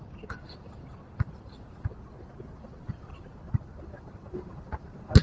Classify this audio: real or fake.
real